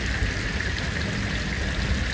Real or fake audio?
real